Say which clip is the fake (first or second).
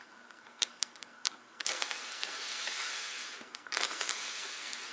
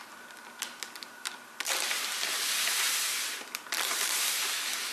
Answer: first